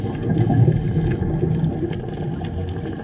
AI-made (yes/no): no